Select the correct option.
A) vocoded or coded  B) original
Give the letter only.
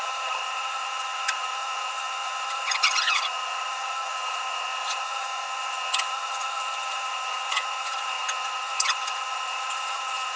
A